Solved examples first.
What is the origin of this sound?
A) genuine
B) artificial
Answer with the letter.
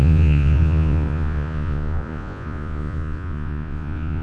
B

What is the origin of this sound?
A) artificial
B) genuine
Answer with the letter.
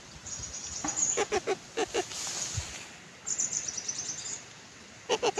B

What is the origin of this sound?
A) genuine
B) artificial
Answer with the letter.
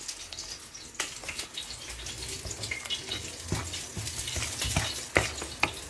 A